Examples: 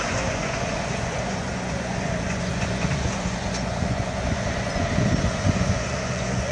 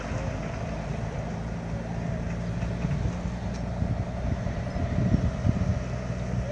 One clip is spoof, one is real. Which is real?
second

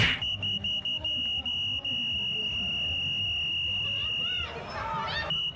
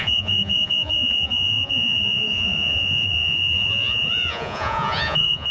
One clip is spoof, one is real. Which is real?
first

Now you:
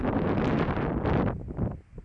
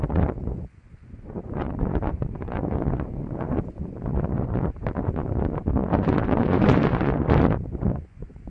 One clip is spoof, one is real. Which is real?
first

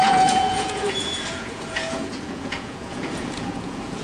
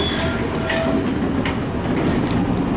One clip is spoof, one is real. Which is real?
second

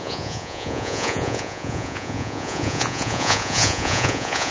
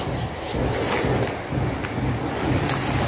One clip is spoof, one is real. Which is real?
second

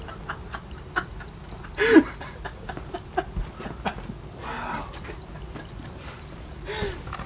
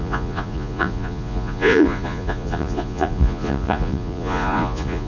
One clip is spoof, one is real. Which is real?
first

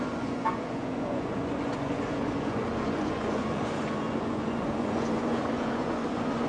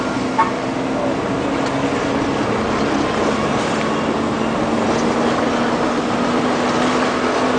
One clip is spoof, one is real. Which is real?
second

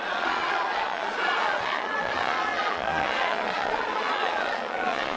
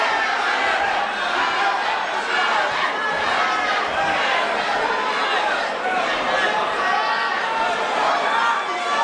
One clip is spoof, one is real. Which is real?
second